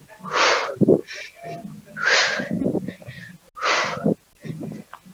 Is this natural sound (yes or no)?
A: yes